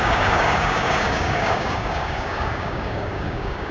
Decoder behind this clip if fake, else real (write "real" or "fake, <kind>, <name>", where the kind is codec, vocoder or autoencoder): fake, codec, DAC